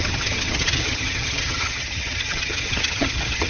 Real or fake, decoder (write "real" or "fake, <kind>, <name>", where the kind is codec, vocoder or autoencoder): fake, vocoder, HiFi-GAN